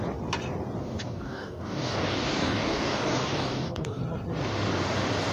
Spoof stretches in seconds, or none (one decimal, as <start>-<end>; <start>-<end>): 0.8-4.0